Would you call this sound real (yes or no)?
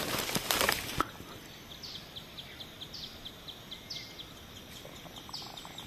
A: yes